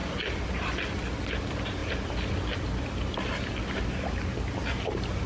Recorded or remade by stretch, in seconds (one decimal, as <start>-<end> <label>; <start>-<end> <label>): 0.0-5.3 recorded